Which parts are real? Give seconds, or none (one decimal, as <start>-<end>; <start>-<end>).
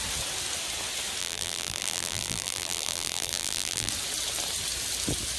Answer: 0.0-1.2; 3.9-5.4